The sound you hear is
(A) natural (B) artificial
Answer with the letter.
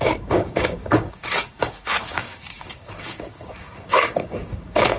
B